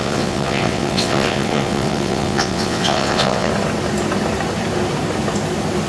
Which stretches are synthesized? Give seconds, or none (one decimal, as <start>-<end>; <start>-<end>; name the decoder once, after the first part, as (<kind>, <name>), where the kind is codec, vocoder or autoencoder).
0.0-3.5 (vocoder, WaveNeXt)